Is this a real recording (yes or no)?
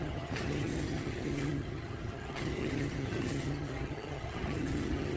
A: no